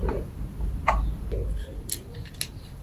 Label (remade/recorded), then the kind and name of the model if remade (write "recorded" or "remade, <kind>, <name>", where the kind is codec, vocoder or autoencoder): recorded